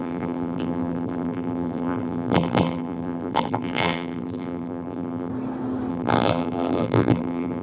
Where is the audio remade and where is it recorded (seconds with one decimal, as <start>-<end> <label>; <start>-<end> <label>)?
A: 0.0-5.3 remade; 5.3-5.9 recorded; 5.9-7.6 remade